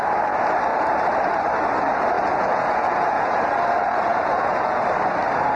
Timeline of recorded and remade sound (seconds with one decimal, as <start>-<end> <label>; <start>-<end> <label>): 0.0-2.3 recorded; 2.3-3.4 remade; 3.4-4.1 recorded; 4.1-4.8 remade; 4.8-5.6 recorded